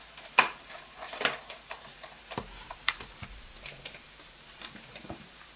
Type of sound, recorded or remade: remade